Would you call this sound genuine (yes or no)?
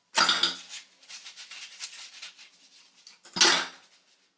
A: yes